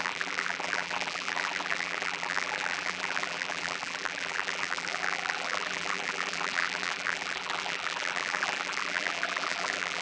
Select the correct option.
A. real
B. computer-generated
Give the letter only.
B